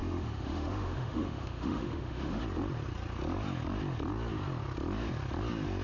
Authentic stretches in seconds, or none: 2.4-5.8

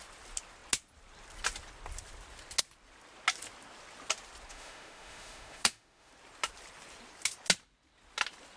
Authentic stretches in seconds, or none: 0.0-4.5; 6.1-8.6